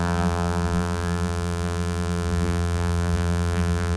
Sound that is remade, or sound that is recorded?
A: remade